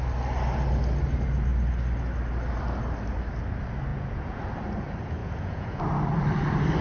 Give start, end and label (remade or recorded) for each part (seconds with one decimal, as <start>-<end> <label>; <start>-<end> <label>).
0.0-3.9 recorded; 3.9-4.4 remade; 4.4-5.2 recorded; 5.2-5.8 remade; 5.8-6.8 recorded